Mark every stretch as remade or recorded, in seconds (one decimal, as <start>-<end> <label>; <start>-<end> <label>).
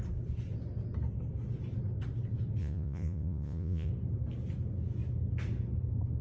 0.0-2.6 recorded; 2.6-3.9 remade; 3.9-6.2 recorded